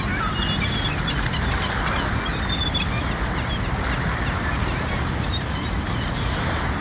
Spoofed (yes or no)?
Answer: no